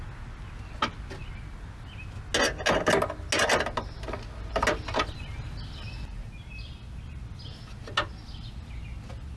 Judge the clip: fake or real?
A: real